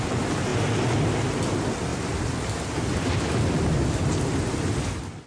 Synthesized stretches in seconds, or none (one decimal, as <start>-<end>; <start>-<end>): none